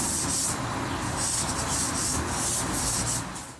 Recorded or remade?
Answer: recorded